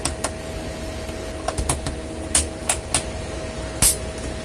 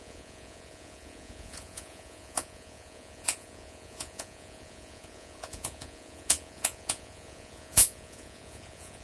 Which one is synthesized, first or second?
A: second